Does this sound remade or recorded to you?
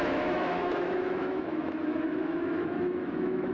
remade